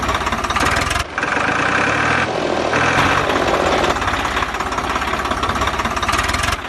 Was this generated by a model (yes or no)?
no